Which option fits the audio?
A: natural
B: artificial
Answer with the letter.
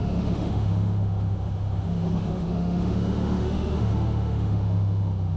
B